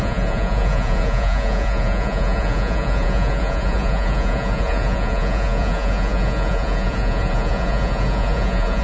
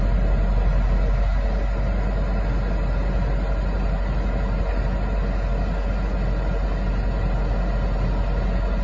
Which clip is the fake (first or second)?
first